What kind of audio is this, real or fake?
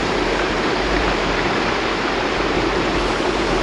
fake